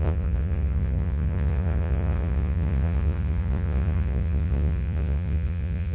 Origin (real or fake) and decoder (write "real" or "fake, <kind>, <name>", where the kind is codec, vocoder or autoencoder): fake, vocoder, Vocos